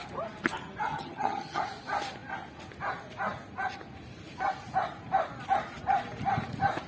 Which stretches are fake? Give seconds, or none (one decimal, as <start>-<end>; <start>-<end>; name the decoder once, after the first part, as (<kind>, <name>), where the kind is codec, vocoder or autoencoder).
0.9-1.6 (vocoder, HiFi-GAN)